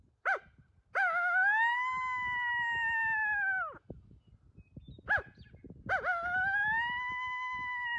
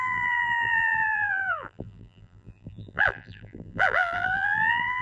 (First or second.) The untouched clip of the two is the first